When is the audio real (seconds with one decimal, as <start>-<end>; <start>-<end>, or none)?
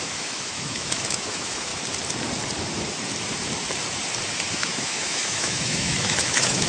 1.7-4.5